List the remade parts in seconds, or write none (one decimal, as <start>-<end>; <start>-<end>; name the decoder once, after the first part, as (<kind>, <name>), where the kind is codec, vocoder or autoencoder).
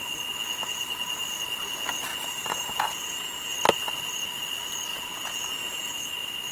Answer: 2.1-3.5 (vocoder, Vocos); 4.9-6.1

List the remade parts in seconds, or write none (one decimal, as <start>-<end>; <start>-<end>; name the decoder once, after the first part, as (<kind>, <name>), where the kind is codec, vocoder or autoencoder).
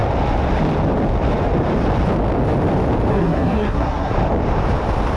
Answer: 3.1-4.1 (codec, SNAC)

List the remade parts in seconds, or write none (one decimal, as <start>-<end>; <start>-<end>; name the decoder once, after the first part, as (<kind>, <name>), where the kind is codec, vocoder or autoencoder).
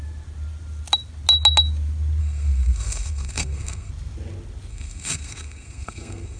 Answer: 2.2-3.9 (codec, SNAC); 4.7-6.4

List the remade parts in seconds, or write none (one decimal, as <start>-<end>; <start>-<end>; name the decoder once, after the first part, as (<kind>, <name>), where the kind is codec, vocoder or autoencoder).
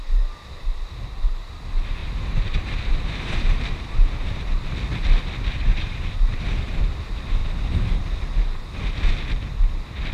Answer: 2.0-4.4 (vocoder, BigVGAN v2); 5.7-6.9; 7.4-8.0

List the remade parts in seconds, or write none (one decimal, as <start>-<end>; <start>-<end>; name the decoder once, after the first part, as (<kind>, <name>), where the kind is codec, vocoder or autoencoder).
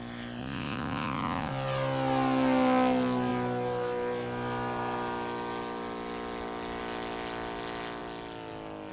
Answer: 0.4-1.5 (vocoder, Vocos)